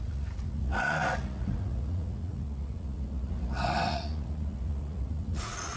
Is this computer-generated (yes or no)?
yes